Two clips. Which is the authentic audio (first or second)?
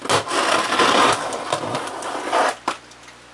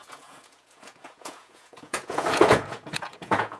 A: first